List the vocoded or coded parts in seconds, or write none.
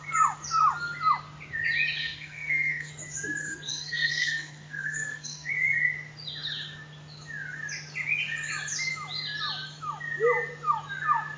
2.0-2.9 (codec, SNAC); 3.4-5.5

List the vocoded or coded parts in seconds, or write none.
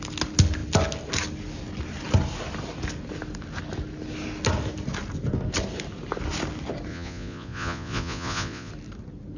6.9-8.7 (vocoder, Vocos)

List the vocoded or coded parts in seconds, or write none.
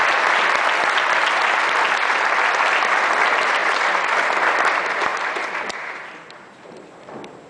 3.6-4.5 (vocoder, BigVGAN v2); 5.1-7.5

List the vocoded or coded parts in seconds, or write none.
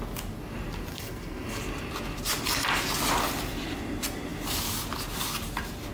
0.9-1.6 (codec, SNAC)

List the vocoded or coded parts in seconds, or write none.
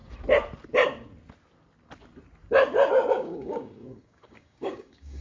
3.1-5.2 (codec, DAC)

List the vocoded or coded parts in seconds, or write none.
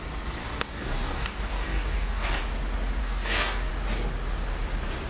0.4-2.4 (codec, DAC); 3.0-3.7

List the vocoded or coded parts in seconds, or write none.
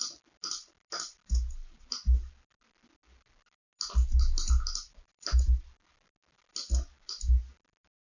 none